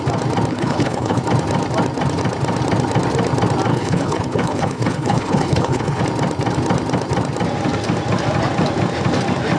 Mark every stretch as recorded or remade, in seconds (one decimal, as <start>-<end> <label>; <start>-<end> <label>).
0.0-0.5 recorded; 0.5-1.2 remade; 1.2-3.7 recorded; 3.7-6.0 remade; 6.0-9.6 recorded